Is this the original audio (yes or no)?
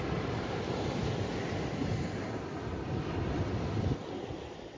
yes